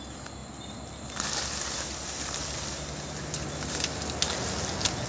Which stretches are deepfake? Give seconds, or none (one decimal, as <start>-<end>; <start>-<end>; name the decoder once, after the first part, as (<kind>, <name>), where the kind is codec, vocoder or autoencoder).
none